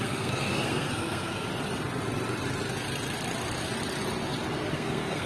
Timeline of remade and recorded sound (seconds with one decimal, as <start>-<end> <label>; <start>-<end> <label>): 0.0-1.5 remade; 1.5-4.7 recorded; 4.7-5.3 remade